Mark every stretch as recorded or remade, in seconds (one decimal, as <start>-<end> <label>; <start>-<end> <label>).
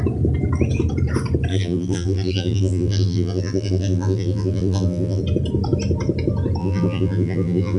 0.0-1.5 recorded; 1.5-5.2 remade; 5.2-6.6 recorded; 6.6-7.8 remade